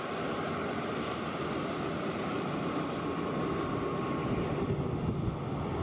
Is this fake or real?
real